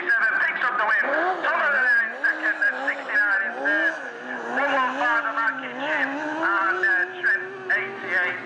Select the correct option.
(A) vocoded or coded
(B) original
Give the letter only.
B